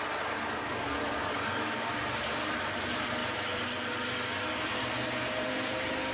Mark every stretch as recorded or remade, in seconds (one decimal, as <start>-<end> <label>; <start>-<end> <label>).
0.0-0.4 recorded; 0.4-1.9 remade; 1.9-6.1 recorded